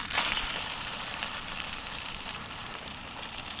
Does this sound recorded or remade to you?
remade